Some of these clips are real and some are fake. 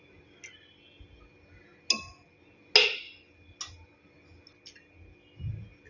real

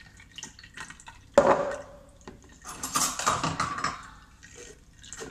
real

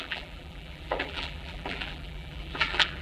fake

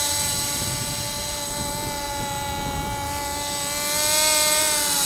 real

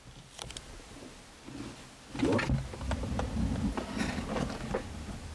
real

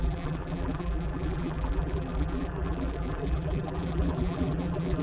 fake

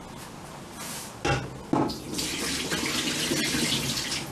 real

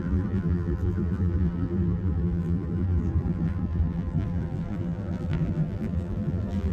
fake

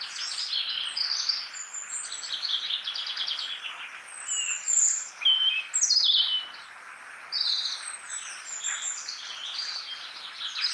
real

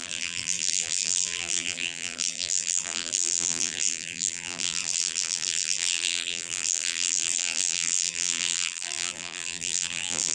fake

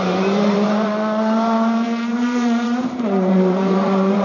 fake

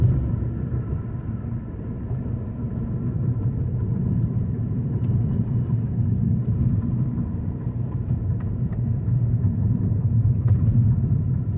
fake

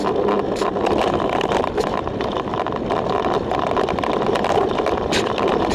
real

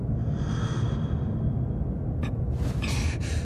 real